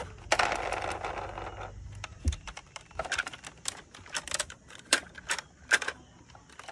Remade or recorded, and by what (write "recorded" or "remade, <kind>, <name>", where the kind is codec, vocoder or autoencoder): recorded